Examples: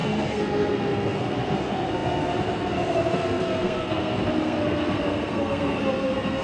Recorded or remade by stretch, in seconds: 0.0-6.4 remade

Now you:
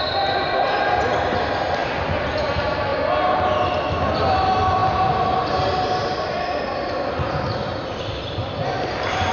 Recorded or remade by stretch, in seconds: 0.0-9.3 recorded